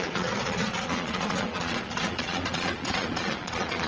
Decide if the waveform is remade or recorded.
remade